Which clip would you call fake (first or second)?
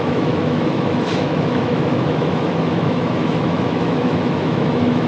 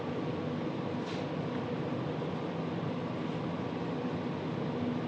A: first